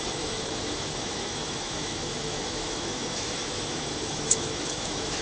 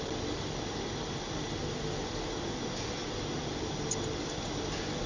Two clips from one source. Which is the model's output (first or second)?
first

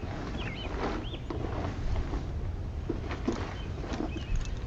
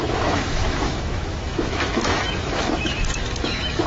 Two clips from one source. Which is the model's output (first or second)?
second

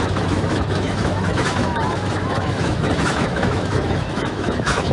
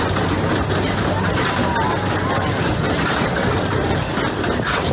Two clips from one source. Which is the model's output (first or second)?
first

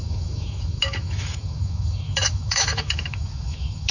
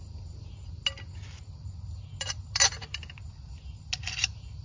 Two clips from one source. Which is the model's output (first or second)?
first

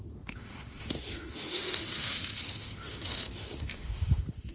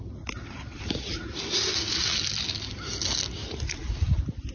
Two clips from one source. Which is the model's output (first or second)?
first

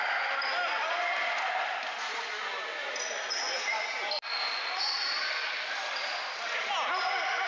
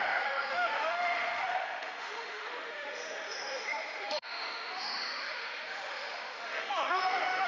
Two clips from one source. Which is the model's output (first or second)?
second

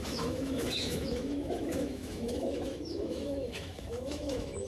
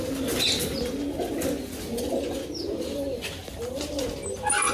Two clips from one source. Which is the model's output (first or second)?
first